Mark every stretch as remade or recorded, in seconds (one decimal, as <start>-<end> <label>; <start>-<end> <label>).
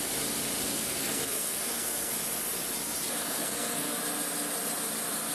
0.0-0.7 recorded; 0.7-2.1 remade; 2.1-3.2 recorded; 3.2-4.0 remade; 4.0-5.3 recorded